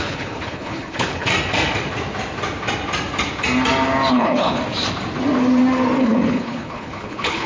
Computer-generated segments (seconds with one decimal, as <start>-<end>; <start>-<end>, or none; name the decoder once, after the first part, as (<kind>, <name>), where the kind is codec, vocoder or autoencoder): 0.0-1.3 (codec, HILCodec); 4.1-4.6; 6.0-7.5

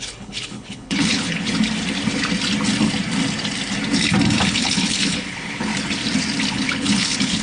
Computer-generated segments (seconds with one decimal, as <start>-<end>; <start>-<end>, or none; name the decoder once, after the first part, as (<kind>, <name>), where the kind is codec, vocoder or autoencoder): 0.0-1.5 (codec, HILCodec); 4.4-5.7; 6.5-7.4